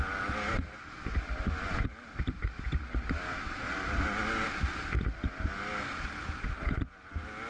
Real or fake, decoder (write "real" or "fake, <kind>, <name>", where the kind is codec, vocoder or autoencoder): real